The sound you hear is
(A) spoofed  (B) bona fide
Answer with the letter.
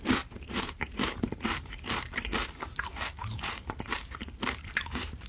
A